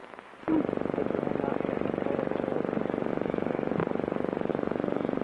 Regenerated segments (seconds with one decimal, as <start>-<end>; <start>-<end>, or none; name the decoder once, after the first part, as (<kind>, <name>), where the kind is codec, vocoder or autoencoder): 3.1-3.8 (autoencoder, DAC-VAE); 4.5-5.2